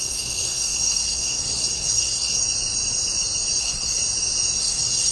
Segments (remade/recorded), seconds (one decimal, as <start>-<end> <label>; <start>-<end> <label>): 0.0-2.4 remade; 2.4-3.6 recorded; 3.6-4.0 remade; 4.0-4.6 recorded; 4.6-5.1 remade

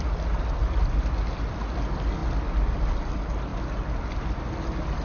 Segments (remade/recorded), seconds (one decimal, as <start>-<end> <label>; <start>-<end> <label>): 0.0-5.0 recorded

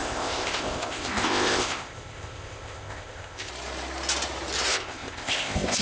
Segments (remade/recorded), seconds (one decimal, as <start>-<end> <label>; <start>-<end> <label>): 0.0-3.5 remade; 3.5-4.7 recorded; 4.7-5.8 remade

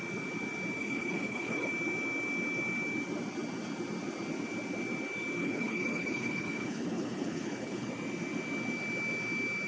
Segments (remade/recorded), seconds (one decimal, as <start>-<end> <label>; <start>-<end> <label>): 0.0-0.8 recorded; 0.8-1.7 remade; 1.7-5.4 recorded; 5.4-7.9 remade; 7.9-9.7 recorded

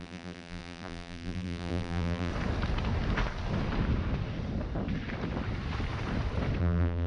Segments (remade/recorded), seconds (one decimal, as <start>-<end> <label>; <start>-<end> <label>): 0.0-2.3 remade; 2.3-6.6 recorded; 6.6-7.1 remade

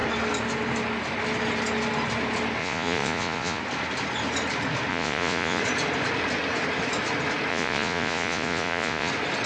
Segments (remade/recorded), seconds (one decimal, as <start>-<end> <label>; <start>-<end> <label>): 0.0-2.6 recorded; 2.6-3.6 remade; 3.6-4.9 recorded; 4.9-5.6 remade; 5.6-7.5 recorded; 7.5-9.1 remade; 9.1-9.5 recorded

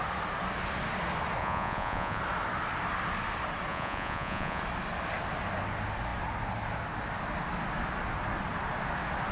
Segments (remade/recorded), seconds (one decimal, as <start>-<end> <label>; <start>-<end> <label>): 0.0-1.4 recorded; 1.4-2.2 remade; 2.2-3.7 recorded; 3.7-4.6 remade; 4.6-9.3 recorded